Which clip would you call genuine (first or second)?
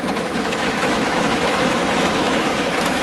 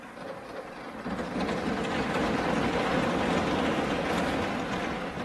second